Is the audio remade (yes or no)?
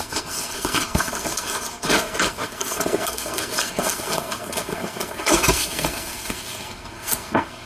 yes